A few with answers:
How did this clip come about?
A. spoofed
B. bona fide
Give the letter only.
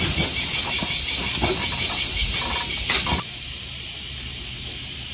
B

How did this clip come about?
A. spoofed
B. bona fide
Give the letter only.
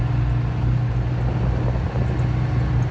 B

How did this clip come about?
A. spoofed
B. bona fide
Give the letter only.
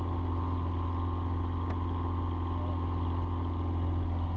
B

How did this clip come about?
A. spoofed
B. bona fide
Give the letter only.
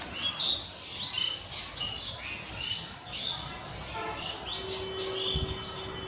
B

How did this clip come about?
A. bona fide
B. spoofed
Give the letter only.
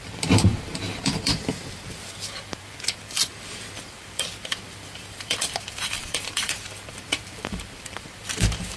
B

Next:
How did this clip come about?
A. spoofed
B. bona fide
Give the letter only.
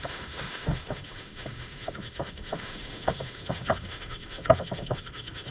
A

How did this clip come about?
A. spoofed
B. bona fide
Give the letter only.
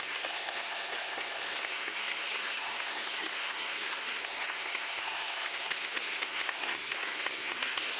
A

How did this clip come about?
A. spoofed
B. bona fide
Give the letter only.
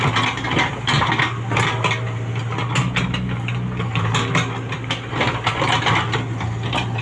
B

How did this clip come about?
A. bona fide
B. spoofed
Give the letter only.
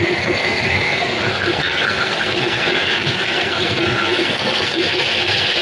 B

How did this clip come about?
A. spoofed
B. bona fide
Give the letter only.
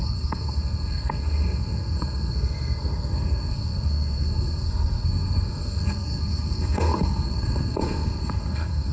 A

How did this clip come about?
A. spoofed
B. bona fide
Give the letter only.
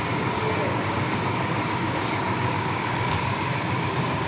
A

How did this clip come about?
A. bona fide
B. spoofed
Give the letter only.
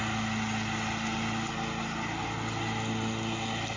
A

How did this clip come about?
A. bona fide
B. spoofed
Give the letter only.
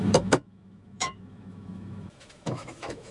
B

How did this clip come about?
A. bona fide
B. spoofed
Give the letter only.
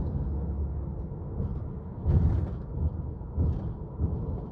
A